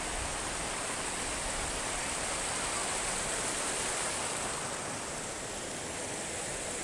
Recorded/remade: recorded